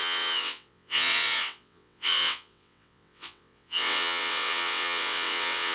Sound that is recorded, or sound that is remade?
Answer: remade